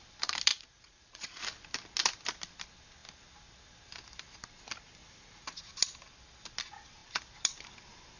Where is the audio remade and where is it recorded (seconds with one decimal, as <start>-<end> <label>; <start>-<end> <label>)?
0.0-0.5 recorded; 0.5-1.4 remade; 1.4-5.0 recorded; 5.0-5.7 remade; 5.7-8.2 recorded